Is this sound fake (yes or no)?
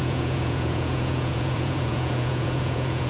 yes